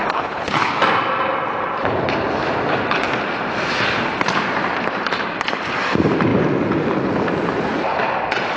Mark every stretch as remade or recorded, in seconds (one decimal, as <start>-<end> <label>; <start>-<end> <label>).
0.0-0.7 remade; 0.7-8.6 recorded